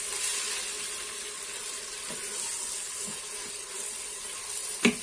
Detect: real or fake real